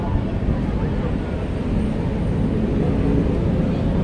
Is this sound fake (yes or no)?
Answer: no